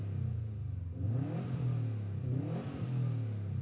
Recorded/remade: recorded